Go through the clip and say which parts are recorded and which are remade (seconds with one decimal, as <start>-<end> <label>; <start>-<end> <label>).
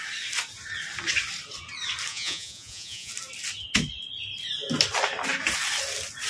0.0-2.1 recorded; 2.1-3.1 remade; 3.1-6.3 recorded